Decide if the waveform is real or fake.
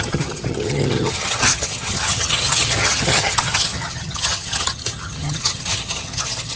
fake